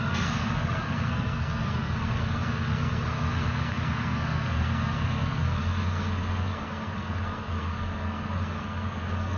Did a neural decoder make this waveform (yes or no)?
yes